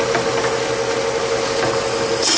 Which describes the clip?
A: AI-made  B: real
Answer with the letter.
B